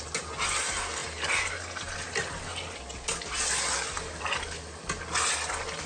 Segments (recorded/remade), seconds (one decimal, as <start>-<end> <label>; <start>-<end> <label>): 0.0-5.9 recorded